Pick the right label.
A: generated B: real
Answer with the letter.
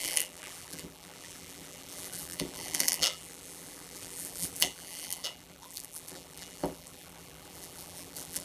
A